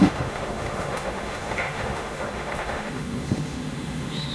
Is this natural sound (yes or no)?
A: no